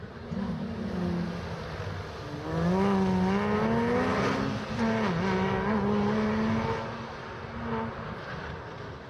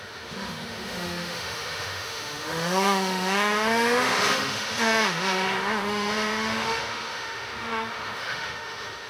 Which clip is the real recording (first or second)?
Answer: first